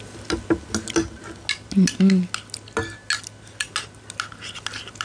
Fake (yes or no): no